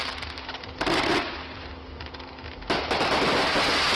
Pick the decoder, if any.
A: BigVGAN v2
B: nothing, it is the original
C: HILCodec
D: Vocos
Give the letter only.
B